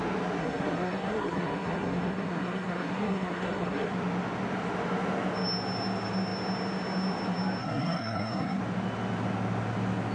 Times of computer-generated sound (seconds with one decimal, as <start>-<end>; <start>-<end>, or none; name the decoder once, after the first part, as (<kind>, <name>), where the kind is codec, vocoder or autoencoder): 0.4-3.9 (codec, SNAC); 7.6-8.6

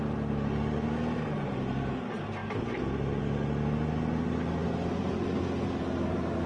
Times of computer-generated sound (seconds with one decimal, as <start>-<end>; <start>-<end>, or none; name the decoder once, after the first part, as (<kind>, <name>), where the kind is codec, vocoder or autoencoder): none